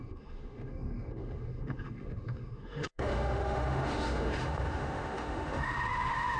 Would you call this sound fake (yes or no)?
yes